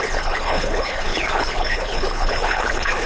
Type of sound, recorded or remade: remade